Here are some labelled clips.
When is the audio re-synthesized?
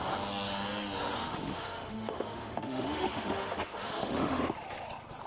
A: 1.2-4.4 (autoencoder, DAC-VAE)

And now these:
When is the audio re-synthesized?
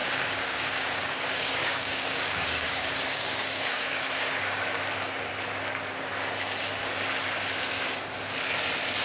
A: 0.0-4.8 (codec, DAC)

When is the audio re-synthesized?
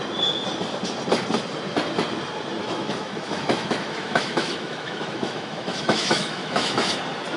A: 2.6-7.0 (autoencoder, DAC-VAE)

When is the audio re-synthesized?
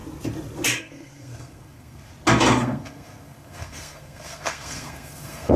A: 0.8-2.1 (codec, SNAC); 2.6-5.6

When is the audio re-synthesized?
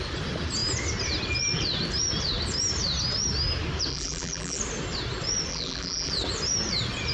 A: 3.9-4.6 (vocoder, BigVGAN v2); 5.5-6.1